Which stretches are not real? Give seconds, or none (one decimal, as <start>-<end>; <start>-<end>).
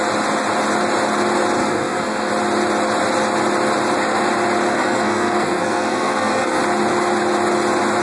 1.6-2.3; 4.7-6.6